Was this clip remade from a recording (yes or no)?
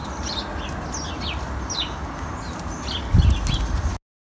no